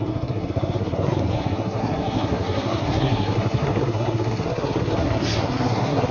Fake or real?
fake